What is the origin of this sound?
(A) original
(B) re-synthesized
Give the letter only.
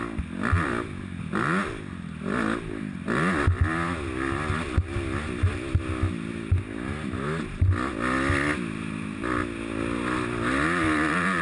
A